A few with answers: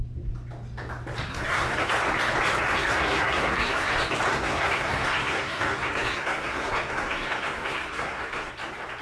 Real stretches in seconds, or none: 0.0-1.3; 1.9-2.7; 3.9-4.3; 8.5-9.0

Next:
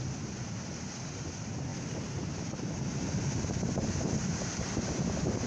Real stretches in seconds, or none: 0.0-1.7; 5.0-5.5

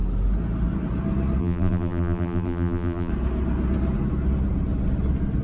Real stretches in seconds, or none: 0.0-1.4; 3.1-5.4